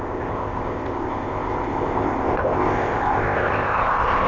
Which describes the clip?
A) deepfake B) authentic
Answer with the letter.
A